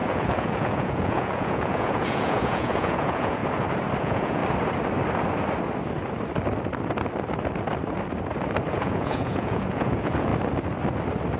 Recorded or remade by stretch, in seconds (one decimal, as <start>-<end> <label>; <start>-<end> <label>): 0.0-3.4 remade; 3.4-4.0 recorded; 4.0-4.4 remade; 4.4-8.7 recorded; 8.7-10.3 remade; 10.3-11.4 recorded